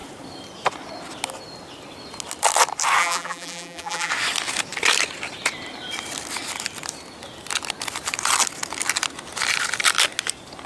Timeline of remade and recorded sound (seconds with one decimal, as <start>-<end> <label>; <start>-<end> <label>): 0.0-3.0 recorded; 3.0-4.1 remade; 4.1-10.7 recorded